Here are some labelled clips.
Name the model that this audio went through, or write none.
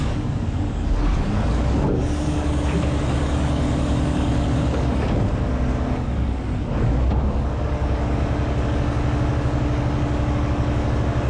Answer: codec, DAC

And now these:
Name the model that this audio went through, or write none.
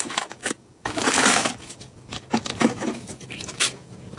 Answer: codec, DAC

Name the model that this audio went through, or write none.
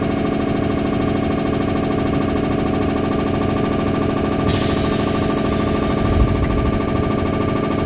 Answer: none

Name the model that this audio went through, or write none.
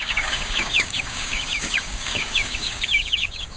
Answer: codec, DAC